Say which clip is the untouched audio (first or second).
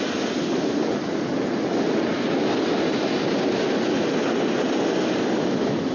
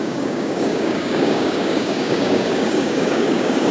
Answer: first